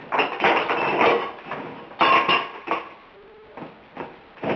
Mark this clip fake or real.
real